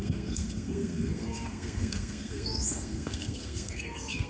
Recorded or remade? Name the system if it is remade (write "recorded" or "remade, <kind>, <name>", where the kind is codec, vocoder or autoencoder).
remade, codec, SNAC